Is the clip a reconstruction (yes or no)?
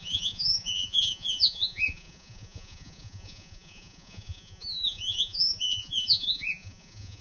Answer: yes